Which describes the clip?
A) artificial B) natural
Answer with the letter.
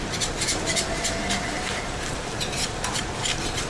A